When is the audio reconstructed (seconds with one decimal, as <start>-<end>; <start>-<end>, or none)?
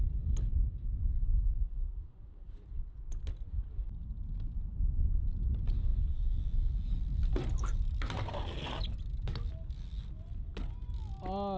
none